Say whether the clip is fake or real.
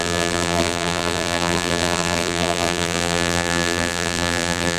fake